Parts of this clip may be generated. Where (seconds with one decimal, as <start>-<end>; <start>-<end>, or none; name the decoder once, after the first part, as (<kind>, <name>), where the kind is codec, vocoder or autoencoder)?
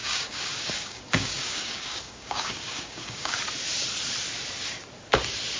0.0-3.4 (codec, DAC)